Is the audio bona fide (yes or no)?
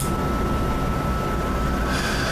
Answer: yes